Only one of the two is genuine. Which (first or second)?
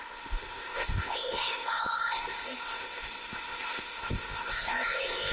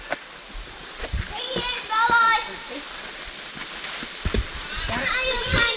second